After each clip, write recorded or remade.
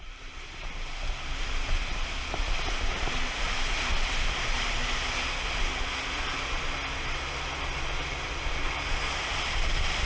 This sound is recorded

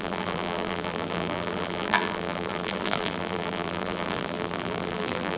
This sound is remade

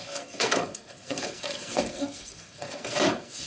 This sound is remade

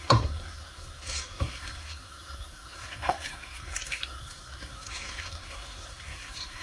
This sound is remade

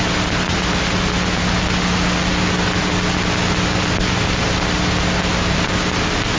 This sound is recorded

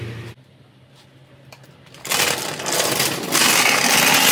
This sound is recorded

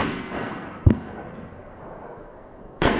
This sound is remade